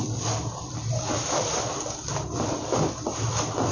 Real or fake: real